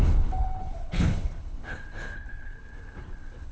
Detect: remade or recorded remade